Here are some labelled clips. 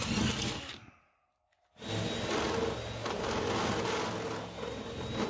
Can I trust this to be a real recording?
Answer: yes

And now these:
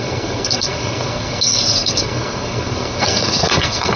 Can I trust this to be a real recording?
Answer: no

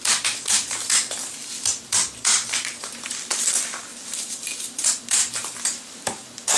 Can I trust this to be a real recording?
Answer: no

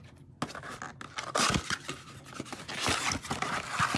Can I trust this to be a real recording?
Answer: yes